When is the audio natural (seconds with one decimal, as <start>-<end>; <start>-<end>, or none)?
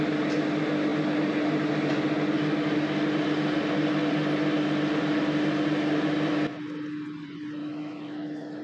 0.0-7.6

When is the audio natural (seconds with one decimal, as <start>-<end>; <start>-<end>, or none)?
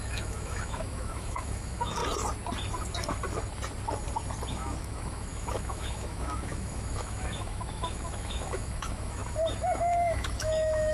2.0-4.5; 9.2-9.8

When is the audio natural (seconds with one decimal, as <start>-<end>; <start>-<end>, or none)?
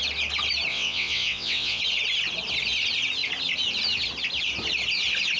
0.0-0.7; 1.8-5.4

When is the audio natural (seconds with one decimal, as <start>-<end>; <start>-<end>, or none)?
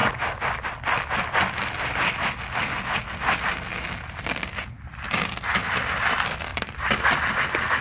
0.0-6.5; 7.1-7.8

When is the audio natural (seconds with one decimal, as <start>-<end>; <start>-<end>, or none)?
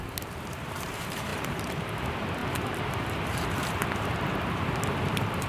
none